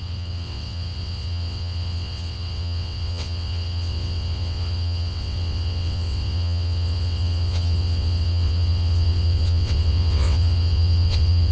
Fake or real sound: fake